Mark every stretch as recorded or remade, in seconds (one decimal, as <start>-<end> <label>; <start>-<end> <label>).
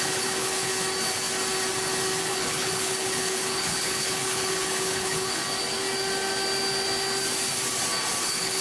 0.0-0.7 remade; 0.7-2.2 recorded; 2.2-5.4 remade; 5.4-8.2 recorded; 8.2-8.6 remade